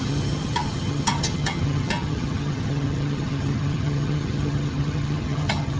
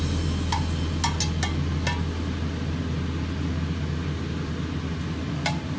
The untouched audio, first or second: second